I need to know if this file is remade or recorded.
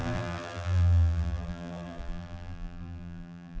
remade